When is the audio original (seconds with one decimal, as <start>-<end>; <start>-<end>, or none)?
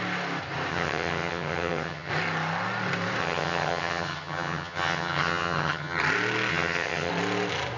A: 0.0-0.7; 2.1-3.2; 6.0-6.5; 7.1-7.8